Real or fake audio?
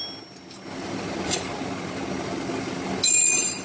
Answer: real